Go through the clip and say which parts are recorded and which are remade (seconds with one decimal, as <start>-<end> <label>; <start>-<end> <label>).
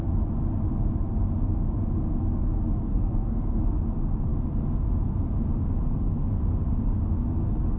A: 0.0-2.8 recorded; 2.8-3.6 remade; 3.6-7.8 recorded